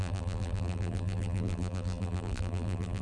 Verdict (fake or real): fake